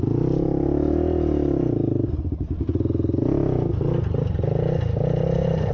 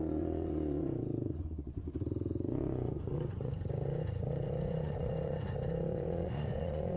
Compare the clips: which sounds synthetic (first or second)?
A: second